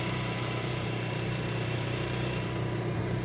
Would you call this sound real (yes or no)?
no